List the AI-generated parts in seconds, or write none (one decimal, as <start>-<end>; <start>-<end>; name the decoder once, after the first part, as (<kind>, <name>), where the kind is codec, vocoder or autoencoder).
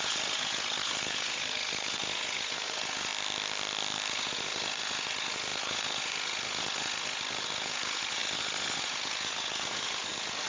0.0-3.1 (vocoder, Vocos); 4.1-10.5